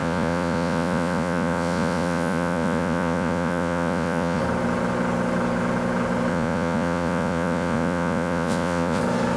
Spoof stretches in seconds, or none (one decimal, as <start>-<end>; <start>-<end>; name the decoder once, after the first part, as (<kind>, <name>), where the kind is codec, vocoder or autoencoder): 0.0-4.4 (vocoder, Vocos); 6.3-9.0